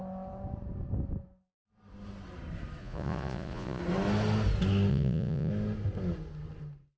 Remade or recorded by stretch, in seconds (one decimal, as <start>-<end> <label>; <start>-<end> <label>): 0.0-2.8 recorded; 2.8-3.8 remade; 3.8-4.9 recorded; 4.9-5.5 remade; 5.5-7.0 recorded